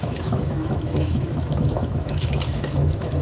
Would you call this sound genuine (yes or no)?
no